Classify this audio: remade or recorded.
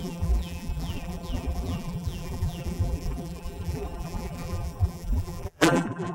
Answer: remade